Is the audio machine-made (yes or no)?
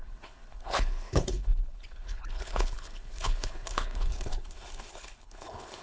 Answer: yes